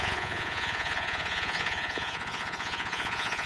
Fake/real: fake